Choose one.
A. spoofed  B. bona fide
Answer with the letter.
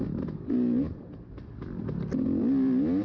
B